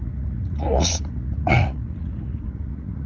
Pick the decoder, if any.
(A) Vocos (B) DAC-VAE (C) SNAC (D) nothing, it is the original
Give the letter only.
A